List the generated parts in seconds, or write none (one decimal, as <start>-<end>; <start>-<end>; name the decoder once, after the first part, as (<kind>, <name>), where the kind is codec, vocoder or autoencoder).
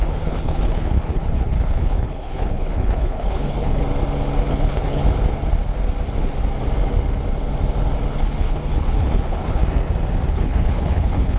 0.0-3.8 (codec, HILCodec); 4.5-5.0; 8.1-9.6; 10.3-11.4